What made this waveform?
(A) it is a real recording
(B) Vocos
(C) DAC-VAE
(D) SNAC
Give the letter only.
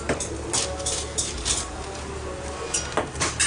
A